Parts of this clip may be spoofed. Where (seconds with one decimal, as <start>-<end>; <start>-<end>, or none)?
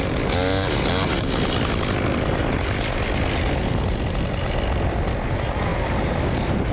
none